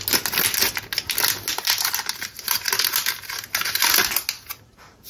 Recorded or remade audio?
recorded